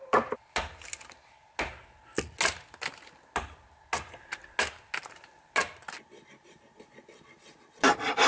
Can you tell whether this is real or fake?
real